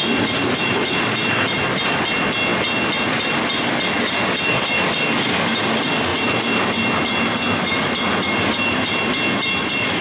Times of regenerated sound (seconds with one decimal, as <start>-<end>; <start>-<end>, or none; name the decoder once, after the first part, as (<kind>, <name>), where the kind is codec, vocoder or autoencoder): none